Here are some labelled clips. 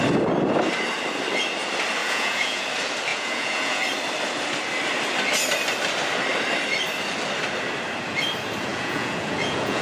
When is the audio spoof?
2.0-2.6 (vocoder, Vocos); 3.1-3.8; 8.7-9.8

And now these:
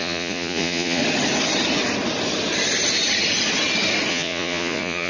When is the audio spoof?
0.0-1.0 (vocoder, Vocos); 4.1-5.1

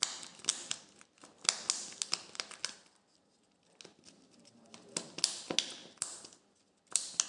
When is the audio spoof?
none